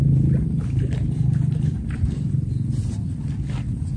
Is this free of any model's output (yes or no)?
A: yes